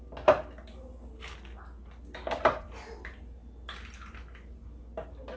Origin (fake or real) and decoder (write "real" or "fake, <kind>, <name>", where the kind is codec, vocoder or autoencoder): real